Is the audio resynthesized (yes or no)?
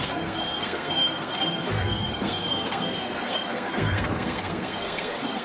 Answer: yes